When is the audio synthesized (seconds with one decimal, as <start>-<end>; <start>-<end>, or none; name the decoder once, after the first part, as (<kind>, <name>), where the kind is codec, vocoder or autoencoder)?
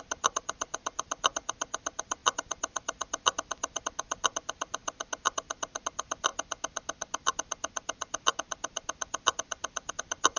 0.0-2.2 (vocoder, BigVGAN v2); 3.8-4.8; 5.8-6.3; 9.9-10.4